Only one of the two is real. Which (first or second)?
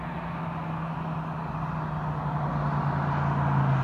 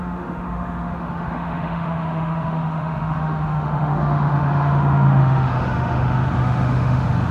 first